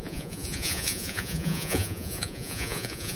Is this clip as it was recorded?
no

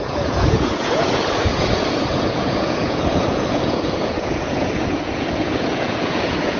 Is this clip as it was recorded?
no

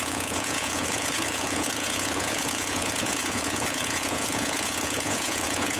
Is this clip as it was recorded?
no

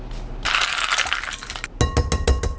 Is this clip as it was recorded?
yes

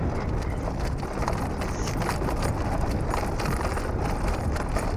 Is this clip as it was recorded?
yes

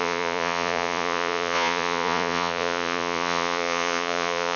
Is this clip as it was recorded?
no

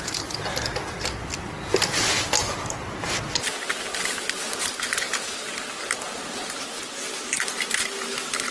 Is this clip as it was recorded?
yes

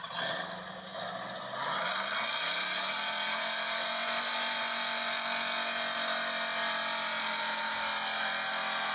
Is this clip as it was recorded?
yes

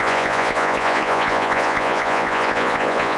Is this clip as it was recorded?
no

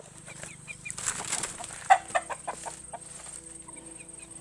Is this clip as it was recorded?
yes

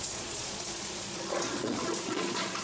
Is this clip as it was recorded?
no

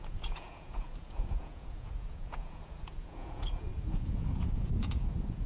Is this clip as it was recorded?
no